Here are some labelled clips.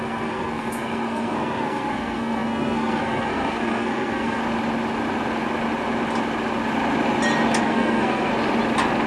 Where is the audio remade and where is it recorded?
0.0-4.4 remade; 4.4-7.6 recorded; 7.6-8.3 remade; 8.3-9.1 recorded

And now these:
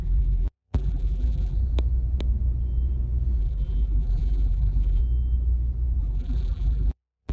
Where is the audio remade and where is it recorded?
0.0-1.6 remade; 1.6-3.4 recorded; 3.4-5.0 remade; 5.0-6.0 recorded; 6.0-7.3 remade

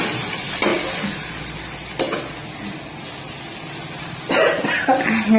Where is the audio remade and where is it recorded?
0.0-5.4 recorded

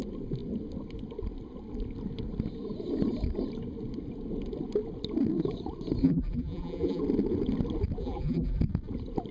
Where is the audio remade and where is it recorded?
0.0-6.0 recorded; 6.0-7.0 remade; 7.0-8.0 recorded; 8.0-8.6 remade; 8.6-9.3 recorded

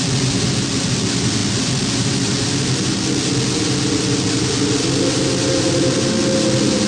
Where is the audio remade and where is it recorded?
0.0-6.9 recorded

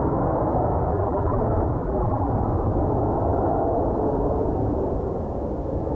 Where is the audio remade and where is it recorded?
0.0-0.9 recorded; 0.9-1.4 remade; 1.4-1.8 recorded; 1.8-2.3 remade; 2.3-5.9 recorded

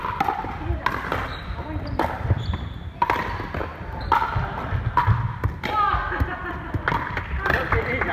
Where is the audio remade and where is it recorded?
0.0-8.1 recorded